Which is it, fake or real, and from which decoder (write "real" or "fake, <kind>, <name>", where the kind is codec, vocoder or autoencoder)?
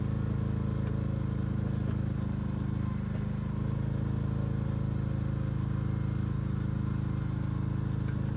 real